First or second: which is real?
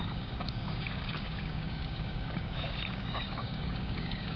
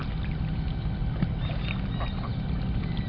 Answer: second